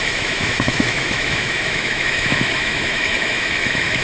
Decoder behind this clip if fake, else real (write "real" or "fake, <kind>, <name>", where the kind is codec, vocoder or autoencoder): fake, autoencoder, DAC-VAE